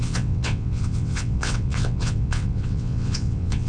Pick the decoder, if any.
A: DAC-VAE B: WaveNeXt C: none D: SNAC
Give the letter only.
B